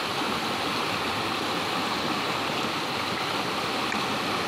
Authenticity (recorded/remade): recorded